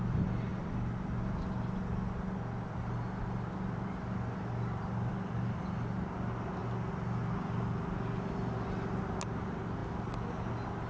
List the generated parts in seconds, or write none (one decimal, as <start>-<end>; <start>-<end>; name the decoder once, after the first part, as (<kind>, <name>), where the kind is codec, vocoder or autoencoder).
none